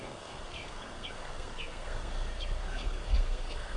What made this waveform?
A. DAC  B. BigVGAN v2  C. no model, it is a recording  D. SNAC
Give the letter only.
D